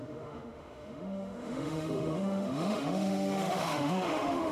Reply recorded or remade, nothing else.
remade